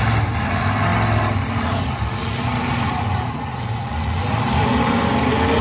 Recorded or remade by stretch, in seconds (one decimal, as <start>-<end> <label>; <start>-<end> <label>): 0.0-5.6 recorded